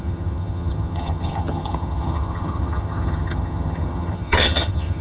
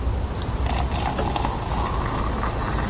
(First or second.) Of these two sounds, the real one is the second